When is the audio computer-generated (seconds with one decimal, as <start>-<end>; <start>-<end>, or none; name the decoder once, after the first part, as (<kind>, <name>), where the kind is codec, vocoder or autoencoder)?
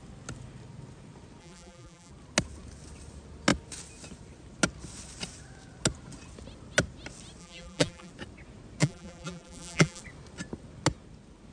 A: 1.4-2.1 (vocoder, BigVGAN v2); 7.4-8.1; 8.8-10.0